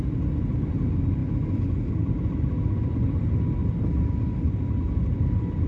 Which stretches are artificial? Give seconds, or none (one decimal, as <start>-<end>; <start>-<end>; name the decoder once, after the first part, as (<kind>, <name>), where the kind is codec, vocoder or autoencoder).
none